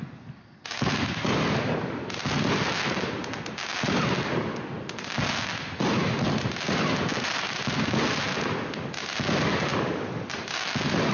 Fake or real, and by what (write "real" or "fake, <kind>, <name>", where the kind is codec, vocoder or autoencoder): real